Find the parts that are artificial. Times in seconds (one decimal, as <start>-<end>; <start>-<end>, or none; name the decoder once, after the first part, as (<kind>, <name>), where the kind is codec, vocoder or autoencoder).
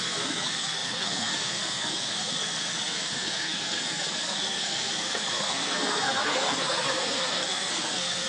0.0-8.3 (codec, SNAC)